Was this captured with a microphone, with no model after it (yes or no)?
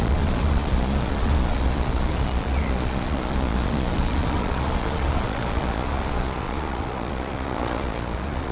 no